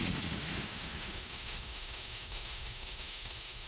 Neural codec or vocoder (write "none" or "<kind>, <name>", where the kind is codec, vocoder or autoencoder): autoencoder, DAC-VAE